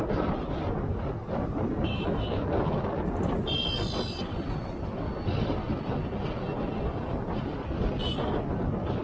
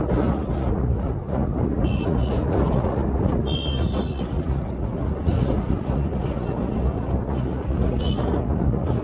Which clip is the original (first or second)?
first